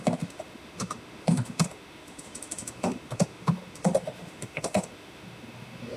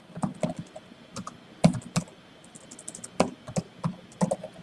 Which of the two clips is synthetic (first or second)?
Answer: first